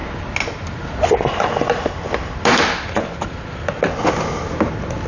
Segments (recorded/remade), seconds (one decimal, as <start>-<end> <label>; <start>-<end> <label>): 0.0-5.1 recorded

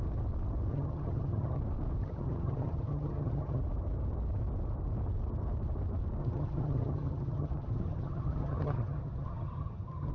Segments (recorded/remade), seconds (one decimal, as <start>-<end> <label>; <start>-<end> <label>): 0.0-0.7 recorded; 0.7-1.6 remade; 1.6-2.0 recorded; 2.0-3.6 remade; 3.6-6.2 recorded; 6.2-10.1 remade

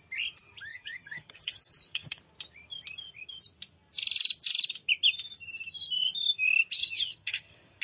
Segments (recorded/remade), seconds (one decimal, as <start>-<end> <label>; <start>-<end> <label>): 0.0-0.7 recorded; 0.7-2.2 remade; 2.2-6.8 recorded; 6.8-7.8 remade

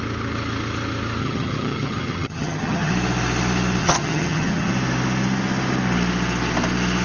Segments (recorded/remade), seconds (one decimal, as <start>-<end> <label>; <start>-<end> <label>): 0.0-1.2 recorded; 1.2-2.9 remade; 2.9-3.8 recorded; 3.8-4.7 remade; 4.7-7.0 recorded

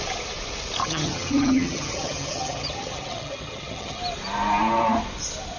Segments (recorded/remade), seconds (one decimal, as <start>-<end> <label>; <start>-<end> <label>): 0.0-0.8 recorded; 0.8-4.0 remade; 4.0-5.6 recorded

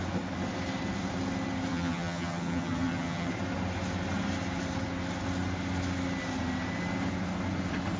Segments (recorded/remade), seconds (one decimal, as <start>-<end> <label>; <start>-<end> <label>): 0.0-1.7 recorded; 1.7-3.3 remade; 3.3-8.0 recorded

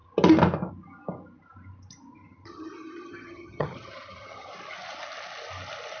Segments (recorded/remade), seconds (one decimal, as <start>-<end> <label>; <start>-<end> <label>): 0.0-2.1 recorded; 2.1-2.7 remade; 2.7-3.1 recorded; 3.1-4.5 remade; 4.5-6.0 recorded

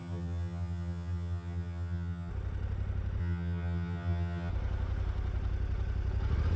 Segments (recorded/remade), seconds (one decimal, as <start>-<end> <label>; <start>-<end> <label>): 0.0-2.3 remade; 2.3-3.2 recorded; 3.2-4.5 remade; 4.5-6.6 recorded